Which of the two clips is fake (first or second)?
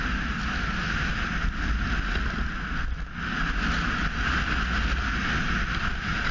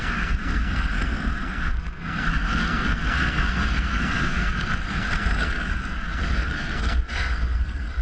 second